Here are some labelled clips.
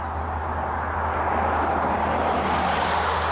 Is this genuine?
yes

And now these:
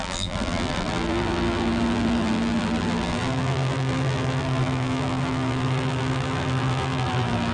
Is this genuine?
no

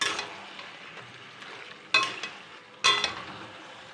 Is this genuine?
yes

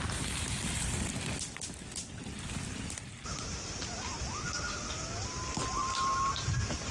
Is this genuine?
yes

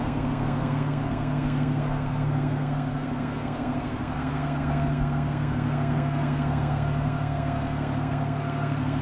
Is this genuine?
no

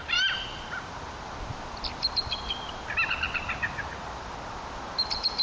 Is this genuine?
yes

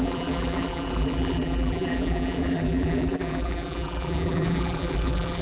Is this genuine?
no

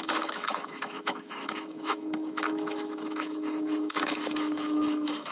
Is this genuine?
no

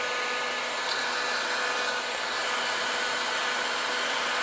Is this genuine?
yes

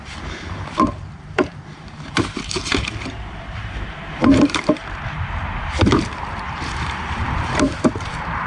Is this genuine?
no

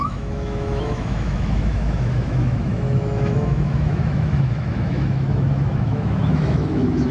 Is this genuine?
no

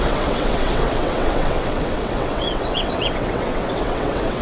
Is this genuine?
no